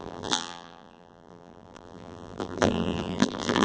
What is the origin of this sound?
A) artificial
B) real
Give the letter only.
A